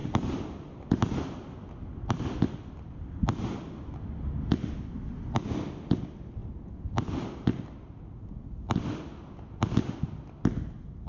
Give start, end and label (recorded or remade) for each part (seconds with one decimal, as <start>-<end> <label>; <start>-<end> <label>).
0.0-11.1 recorded